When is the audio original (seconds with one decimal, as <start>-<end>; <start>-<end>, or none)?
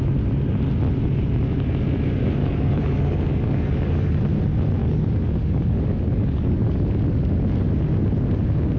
0.0-2.4; 4.2-4.8; 6.9-8.8